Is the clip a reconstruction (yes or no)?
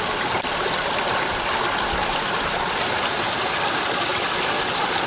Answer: no